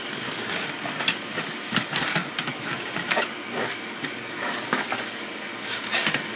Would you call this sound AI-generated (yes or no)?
yes